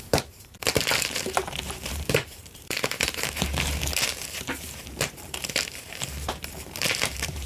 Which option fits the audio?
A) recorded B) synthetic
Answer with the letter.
B